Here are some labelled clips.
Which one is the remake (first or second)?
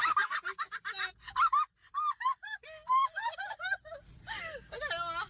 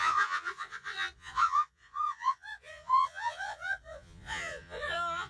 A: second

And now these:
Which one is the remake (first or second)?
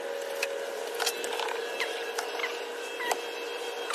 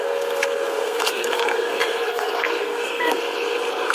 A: second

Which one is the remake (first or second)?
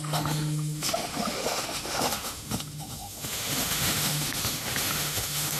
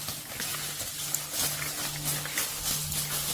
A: first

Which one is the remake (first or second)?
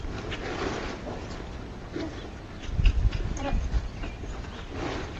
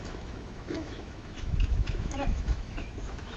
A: second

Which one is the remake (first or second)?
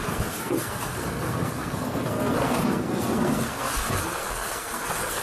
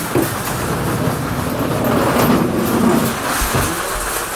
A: first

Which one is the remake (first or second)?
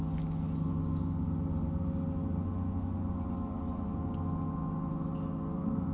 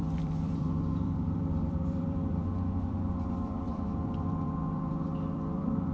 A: second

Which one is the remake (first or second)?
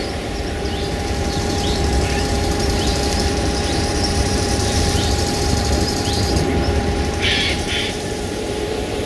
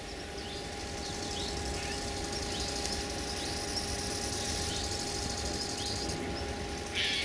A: first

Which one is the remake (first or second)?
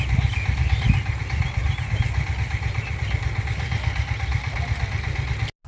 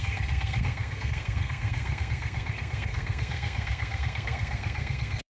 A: second